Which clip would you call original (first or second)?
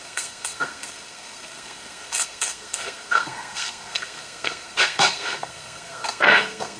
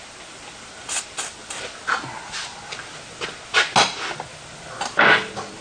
second